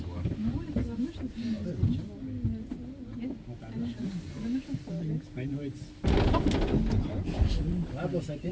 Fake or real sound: real